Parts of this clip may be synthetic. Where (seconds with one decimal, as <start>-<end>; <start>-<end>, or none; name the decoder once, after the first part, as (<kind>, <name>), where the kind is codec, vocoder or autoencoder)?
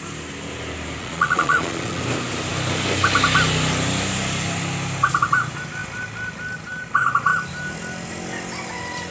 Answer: 1.0-2.0 (vocoder, Vocos)